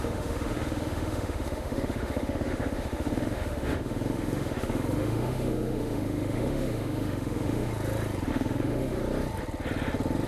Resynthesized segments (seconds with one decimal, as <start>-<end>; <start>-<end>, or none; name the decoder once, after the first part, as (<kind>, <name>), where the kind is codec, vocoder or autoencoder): 0.0-7.7 (autoencoder, DAC-VAE); 8.3-9.0